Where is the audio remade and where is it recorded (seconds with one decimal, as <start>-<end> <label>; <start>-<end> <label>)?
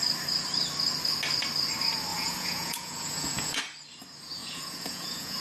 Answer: 0.0-2.1 recorded; 2.1-3.6 remade; 3.6-4.4 recorded; 4.4-5.4 remade